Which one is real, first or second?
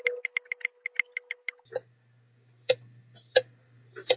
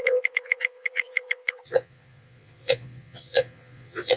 first